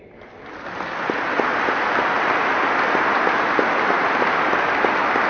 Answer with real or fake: real